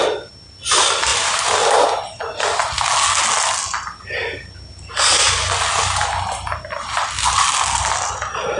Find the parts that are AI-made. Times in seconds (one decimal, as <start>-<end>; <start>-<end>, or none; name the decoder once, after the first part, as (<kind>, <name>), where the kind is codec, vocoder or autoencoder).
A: 1.1-1.6 (vocoder, BigVGAN v2)